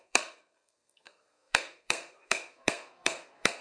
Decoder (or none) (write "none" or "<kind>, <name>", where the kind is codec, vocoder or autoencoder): codec, SNAC